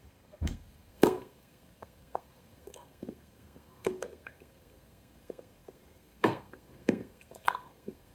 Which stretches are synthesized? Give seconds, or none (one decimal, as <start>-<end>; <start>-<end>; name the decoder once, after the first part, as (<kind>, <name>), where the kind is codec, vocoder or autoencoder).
0.0-8.1 (codec, SNAC)